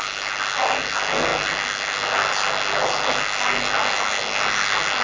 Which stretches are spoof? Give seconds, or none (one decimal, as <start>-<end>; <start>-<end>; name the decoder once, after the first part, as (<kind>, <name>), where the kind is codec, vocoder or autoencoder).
none